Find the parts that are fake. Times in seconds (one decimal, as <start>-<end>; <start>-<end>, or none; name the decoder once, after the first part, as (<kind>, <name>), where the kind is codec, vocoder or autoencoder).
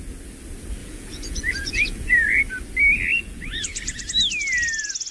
0.8-2.4 (vocoder, Vocos); 3.1-4.0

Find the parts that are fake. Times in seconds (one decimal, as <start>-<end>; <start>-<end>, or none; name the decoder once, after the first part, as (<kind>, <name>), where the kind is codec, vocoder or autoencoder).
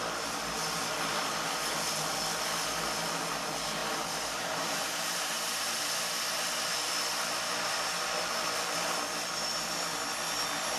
3.8-5.8 (vocoder, BigVGAN v2)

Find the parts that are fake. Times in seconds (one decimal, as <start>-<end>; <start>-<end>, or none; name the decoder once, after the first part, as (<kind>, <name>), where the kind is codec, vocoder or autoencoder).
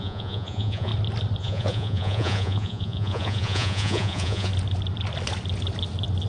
0.0-0.9 (vocoder, Vocos); 1.4-4.5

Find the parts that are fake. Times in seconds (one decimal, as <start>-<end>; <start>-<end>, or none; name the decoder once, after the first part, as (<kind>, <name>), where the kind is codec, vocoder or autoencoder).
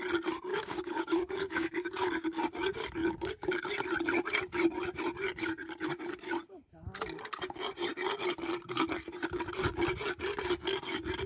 0.5-2.1 (codec, DAC); 3.0-3.6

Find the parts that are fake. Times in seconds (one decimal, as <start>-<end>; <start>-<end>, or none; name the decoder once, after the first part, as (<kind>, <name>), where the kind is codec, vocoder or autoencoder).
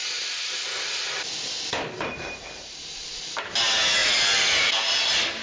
0.0-3.2 (vocoder, BigVGAN v2); 4.0-5.0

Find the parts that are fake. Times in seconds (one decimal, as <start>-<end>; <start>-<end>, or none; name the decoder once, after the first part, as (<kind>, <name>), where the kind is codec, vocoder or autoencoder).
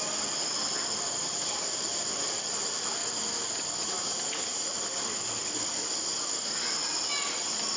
0.0-3.0 (vocoder, BigVGAN v2)